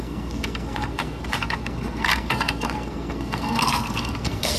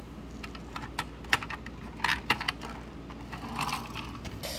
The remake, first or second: first